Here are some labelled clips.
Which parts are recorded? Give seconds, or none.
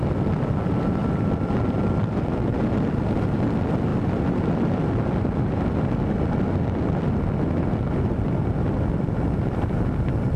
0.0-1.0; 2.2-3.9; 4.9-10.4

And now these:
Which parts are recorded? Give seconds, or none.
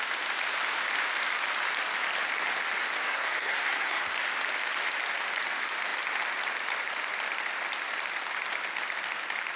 0.0-3.0; 4.0-9.6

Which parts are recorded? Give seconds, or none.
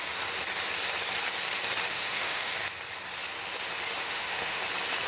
0.0-1.9; 2.5-4.0; 4.6-5.1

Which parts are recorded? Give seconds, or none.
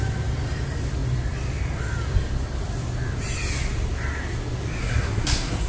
0.0-4.8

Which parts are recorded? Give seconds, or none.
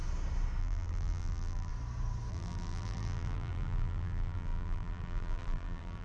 0.0-0.6; 1.7-2.3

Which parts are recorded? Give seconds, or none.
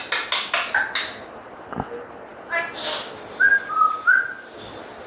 0.0-5.1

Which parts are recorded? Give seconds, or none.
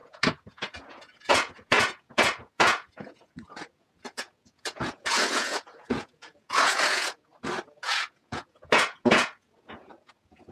7.3-7.8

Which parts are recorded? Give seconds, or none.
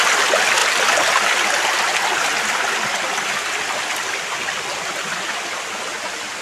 0.0-6.4